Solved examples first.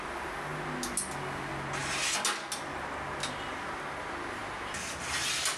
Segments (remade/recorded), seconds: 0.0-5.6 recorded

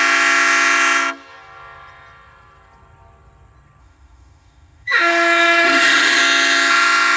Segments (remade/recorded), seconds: 0.0-3.8 recorded; 3.8-6.2 remade; 6.2-7.2 recorded

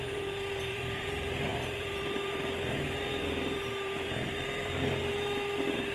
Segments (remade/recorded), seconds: 0.0-5.9 remade

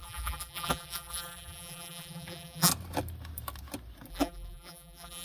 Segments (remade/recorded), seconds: 0.0-2.7 remade; 2.7-4.1 recorded; 4.1-5.2 remade

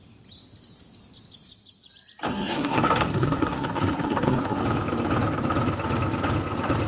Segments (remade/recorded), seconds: 0.0-2.3 recorded; 2.3-4.6 remade; 4.6-6.9 recorded

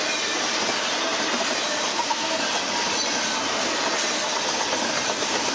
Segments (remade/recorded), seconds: 0.0-1.9 recorded; 1.9-2.4 remade; 2.4-5.5 recorded